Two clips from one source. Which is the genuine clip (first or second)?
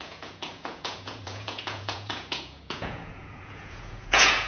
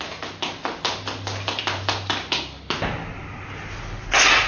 second